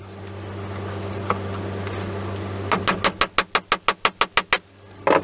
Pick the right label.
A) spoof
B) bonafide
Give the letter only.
B